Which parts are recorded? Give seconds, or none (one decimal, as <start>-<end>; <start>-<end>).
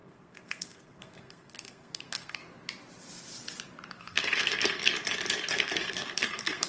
2.4-3.9; 4.9-5.5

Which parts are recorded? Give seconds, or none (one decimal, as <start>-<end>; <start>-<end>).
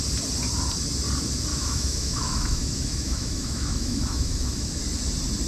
0.0-1.5; 4.8-5.5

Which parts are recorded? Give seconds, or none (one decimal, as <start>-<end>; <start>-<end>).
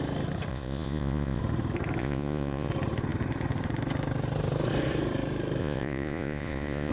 0.0-0.5; 1.4-2.0; 2.7-5.6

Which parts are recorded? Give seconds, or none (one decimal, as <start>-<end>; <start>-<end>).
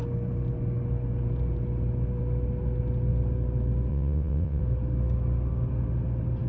0.0-3.9; 4.6-6.5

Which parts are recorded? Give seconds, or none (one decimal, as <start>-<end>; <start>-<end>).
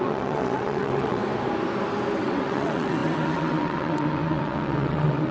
1.2-2.2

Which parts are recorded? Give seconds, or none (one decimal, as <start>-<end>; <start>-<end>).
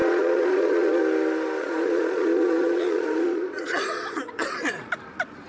1.0-1.6; 4.9-5.5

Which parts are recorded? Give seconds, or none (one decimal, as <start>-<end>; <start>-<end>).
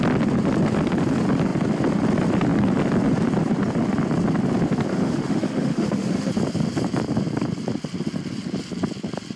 0.0-4.9; 6.3-9.4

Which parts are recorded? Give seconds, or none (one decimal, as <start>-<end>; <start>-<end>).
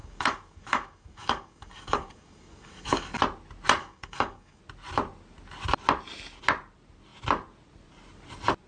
3.2-3.8; 4.6-8.7